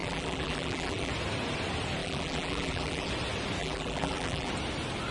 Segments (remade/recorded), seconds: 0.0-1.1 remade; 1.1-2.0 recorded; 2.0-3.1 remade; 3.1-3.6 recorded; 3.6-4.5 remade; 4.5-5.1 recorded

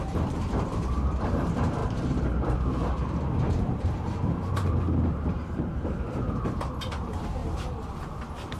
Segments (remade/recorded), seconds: 0.0-7.4 remade; 7.4-8.1 recorded; 8.1-8.6 remade